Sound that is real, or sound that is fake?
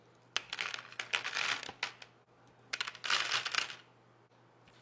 real